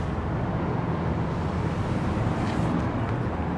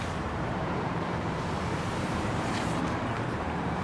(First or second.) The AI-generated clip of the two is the second